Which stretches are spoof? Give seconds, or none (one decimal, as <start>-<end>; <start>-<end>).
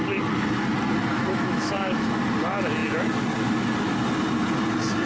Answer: 1.1-2.1